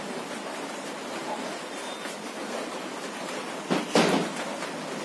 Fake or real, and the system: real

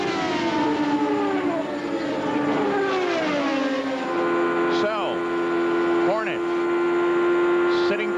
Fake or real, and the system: real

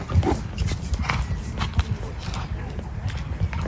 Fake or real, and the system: real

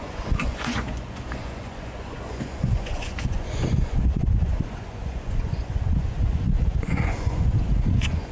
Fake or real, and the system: fake, vocoder, Vocos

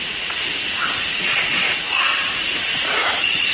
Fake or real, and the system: fake, vocoder, Vocos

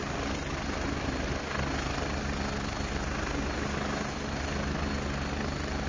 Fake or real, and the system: real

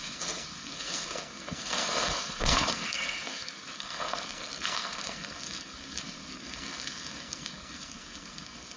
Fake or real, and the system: fake, codec, SNAC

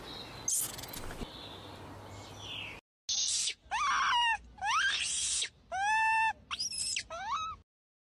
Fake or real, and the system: real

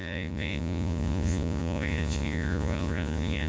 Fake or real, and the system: fake, vocoder, Vocos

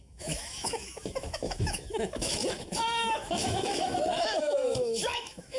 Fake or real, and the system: fake, autoencoder, DAC-VAE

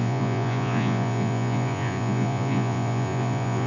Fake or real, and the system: fake, vocoder, Vocos